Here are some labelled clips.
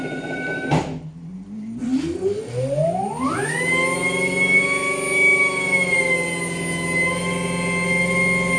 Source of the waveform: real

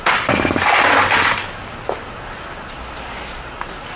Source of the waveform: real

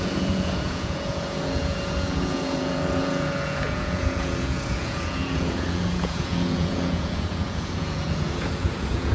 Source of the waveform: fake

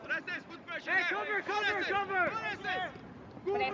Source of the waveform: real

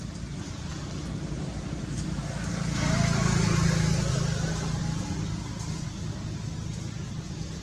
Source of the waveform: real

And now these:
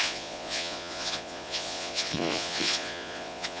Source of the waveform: fake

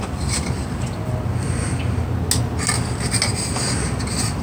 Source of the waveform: real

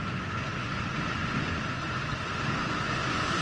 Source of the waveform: fake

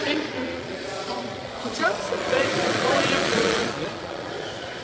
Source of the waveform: fake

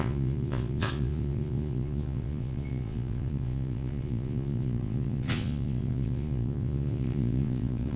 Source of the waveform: fake